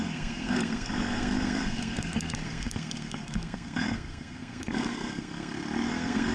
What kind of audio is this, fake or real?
fake